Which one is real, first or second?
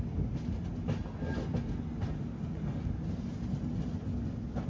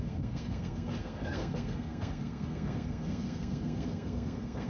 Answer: first